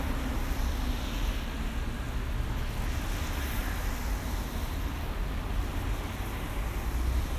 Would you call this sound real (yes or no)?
yes